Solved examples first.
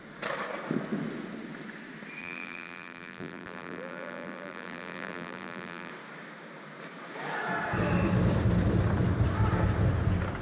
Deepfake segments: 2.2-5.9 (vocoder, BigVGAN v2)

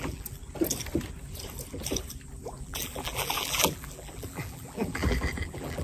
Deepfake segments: 0.0-0.4 (vocoder, BigVGAN v2); 2.6-5.8